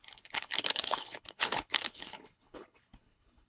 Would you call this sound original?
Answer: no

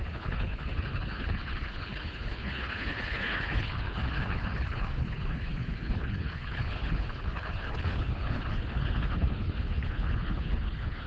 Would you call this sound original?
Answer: no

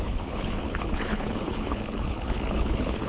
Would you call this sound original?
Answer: no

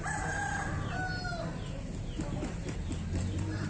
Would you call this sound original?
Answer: yes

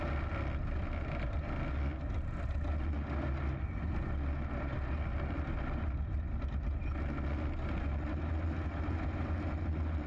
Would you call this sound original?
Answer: yes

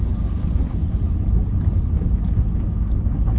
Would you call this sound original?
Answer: yes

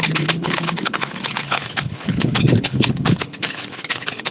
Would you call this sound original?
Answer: no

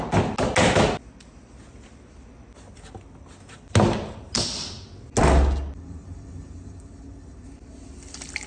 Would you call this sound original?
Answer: yes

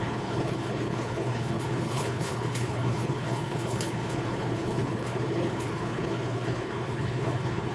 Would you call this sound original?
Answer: no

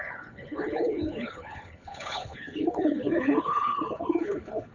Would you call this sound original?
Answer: no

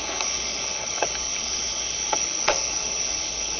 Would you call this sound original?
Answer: no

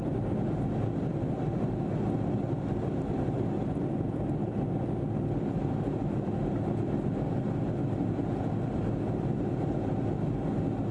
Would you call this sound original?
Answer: yes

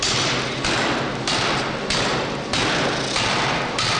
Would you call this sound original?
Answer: yes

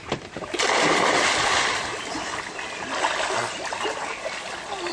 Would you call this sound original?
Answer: yes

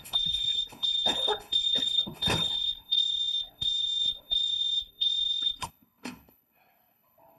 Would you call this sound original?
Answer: no